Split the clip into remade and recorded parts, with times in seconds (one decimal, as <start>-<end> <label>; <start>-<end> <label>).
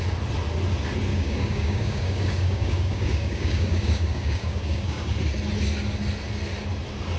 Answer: 0.0-1.1 recorded; 1.1-5.1 remade; 5.1-7.2 recorded